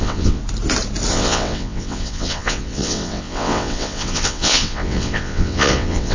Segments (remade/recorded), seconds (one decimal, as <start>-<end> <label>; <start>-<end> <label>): 0.0-0.4 remade; 0.4-1.1 recorded; 1.1-6.1 remade